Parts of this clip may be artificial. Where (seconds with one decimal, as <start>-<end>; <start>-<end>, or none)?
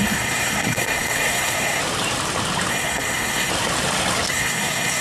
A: 0.0-1.8; 2.7-3.5; 4.3-5.0